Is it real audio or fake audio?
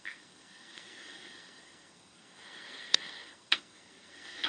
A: fake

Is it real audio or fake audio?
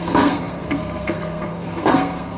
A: fake